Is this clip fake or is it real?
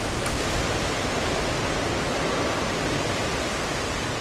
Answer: real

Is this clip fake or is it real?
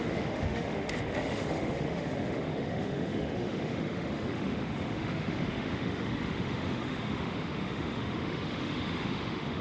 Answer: fake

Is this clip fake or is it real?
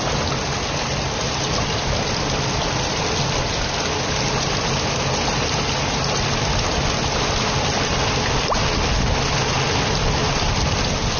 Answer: real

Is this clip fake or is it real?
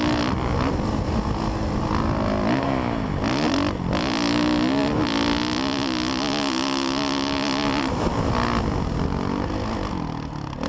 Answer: real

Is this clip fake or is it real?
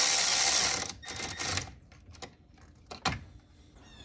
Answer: real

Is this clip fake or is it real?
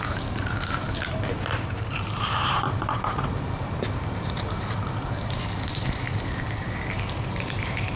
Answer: fake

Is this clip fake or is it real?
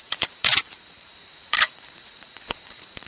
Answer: fake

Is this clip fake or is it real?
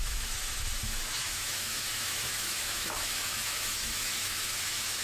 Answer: fake